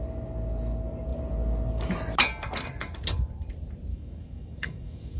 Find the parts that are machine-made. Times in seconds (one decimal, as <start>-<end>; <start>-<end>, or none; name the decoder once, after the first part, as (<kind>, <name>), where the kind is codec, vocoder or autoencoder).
3.9-5.2 (autoencoder, DAC-VAE)